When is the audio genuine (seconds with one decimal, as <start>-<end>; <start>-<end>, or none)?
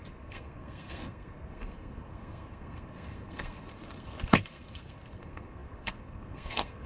none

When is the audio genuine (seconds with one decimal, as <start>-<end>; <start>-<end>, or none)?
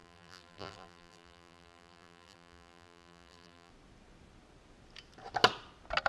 3.7-6.1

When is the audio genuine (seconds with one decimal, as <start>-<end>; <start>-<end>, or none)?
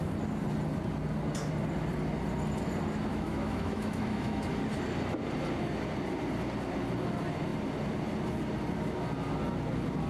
0.0-3.1; 4.6-10.1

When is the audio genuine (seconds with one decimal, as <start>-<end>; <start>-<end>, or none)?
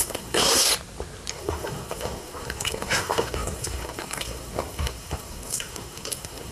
0.7-1.3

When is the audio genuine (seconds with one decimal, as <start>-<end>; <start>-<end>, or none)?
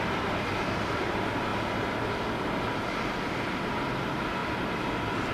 0.0-5.3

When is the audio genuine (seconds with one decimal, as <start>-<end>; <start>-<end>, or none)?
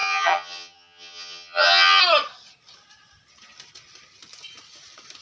2.0-5.2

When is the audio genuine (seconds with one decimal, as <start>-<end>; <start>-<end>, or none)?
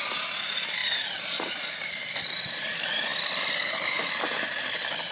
0.0-0.8; 2.1-5.1